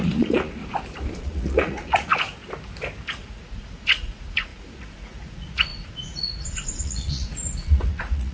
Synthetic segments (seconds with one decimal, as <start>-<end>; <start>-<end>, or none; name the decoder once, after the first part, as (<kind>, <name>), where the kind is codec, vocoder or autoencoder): 0.0-0.6 (vocoder, Vocos); 1.2-2.1; 3.2-8.3